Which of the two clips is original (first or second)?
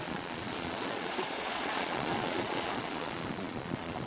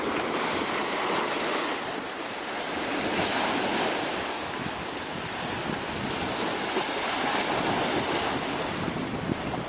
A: second